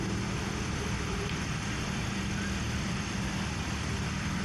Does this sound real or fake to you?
fake